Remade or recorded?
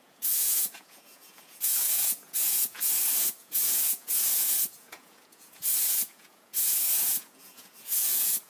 remade